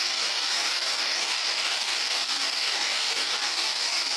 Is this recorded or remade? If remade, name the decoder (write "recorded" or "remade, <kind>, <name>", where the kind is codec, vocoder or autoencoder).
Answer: remade, codec, DAC